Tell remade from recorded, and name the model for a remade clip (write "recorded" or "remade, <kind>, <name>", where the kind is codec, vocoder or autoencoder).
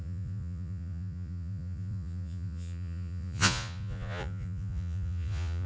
remade, vocoder, Vocos